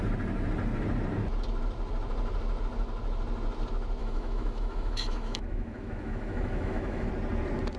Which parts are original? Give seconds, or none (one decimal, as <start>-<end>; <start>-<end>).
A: 0.0-4.0; 7.1-7.8